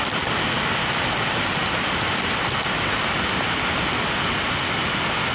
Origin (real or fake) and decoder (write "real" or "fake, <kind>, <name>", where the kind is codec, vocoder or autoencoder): real